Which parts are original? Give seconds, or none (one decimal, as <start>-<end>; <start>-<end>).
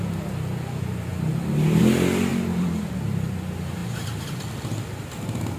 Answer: 0.0-2.3; 2.9-3.8; 4.4-5.6